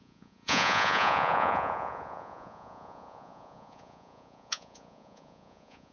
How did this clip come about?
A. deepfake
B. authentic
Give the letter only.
A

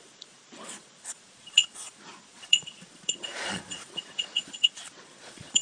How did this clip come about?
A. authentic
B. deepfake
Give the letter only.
B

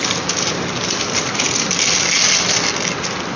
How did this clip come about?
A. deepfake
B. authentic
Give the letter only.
B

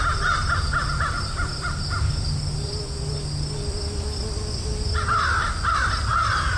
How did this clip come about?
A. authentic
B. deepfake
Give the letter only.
A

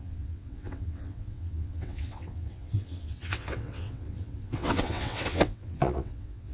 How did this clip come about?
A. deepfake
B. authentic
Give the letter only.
A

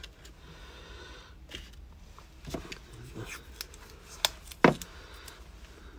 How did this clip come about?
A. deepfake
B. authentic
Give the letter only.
B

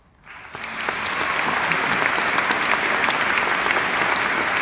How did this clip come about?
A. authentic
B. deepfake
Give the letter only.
A